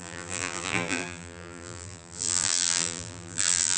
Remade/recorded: remade